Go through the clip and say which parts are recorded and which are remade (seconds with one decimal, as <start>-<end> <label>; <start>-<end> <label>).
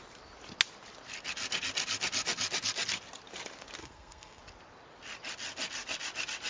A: 0.0-3.8 recorded; 3.8-4.4 remade; 4.4-6.5 recorded